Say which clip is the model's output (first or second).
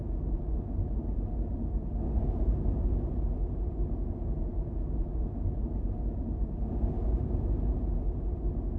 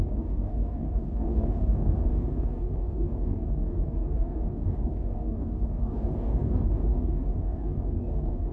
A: second